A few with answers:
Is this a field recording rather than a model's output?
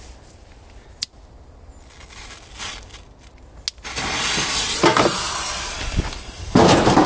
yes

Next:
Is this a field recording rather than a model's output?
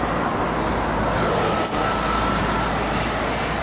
yes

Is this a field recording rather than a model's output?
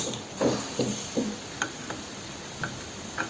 no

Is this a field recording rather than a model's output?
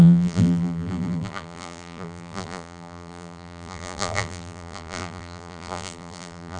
no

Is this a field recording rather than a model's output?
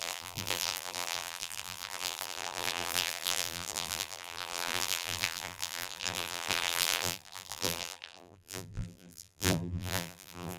no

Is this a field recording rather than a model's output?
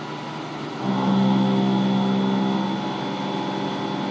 yes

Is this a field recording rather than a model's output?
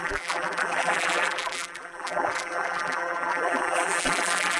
no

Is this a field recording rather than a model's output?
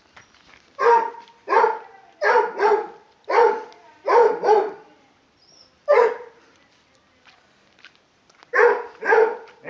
no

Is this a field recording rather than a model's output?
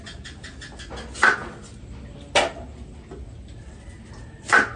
yes